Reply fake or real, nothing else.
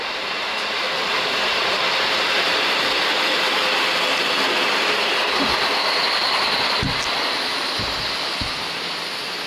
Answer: real